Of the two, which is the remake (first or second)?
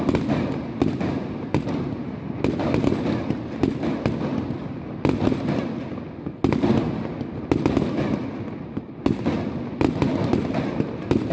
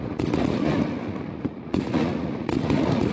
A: second